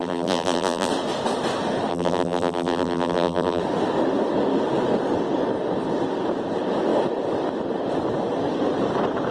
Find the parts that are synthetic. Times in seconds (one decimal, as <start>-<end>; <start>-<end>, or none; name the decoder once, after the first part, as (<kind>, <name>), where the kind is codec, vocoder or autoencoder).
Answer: 0.0-0.9 (vocoder, BigVGAN v2); 1.9-3.6